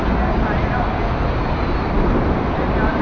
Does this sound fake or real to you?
real